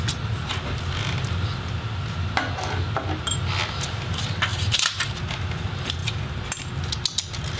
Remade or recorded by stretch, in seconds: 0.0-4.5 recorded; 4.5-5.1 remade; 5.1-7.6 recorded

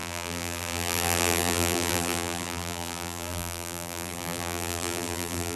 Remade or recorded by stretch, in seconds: 0.0-5.6 remade

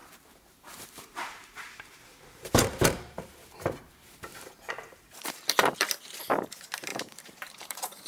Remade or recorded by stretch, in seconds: 0.0-4.7 remade; 4.7-6.9 recorded; 6.9-8.1 remade

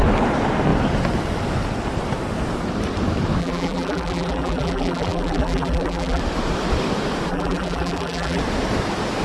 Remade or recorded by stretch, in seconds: 0.0-3.4 recorded; 3.4-6.2 remade; 6.2-7.3 recorded; 7.3-8.4 remade; 8.4-9.2 recorded